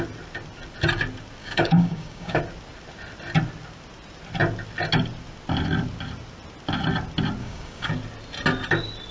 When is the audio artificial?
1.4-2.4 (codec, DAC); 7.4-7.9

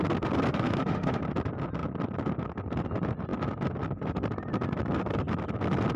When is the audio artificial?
0.5-1.2 (autoencoder, DAC-VAE)

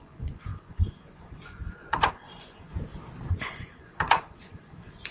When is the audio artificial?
0.0-2.7 (vocoder, Vocos); 3.3-5.1

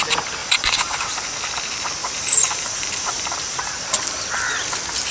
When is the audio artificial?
0.4-1.2 (vocoder, BigVGAN v2); 2.0-4.4